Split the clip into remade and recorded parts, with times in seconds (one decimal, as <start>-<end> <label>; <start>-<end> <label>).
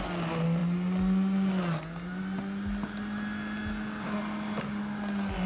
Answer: 0.0-5.5 recorded